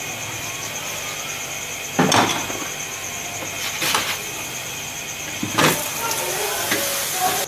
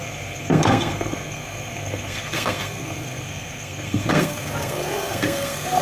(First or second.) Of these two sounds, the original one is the first